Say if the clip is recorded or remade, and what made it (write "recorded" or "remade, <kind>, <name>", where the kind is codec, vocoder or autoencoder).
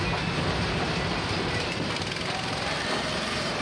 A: recorded